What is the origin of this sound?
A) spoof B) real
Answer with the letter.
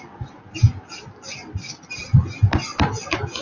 B